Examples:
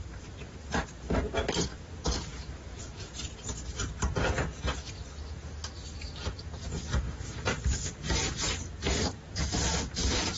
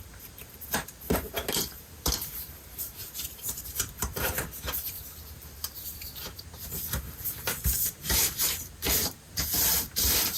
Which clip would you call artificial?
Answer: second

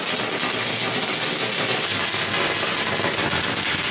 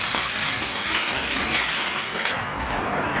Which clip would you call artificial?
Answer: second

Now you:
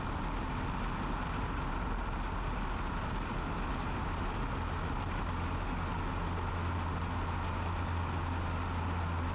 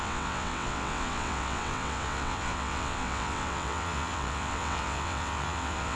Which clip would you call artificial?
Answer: second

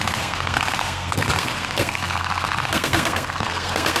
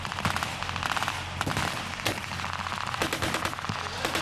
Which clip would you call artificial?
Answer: first